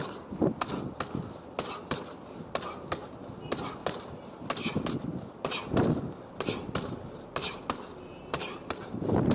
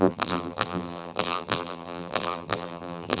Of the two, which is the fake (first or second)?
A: second